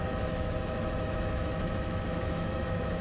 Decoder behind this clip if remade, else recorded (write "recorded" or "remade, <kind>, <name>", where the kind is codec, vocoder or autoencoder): remade, autoencoder, DAC-VAE